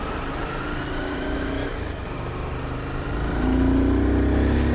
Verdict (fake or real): real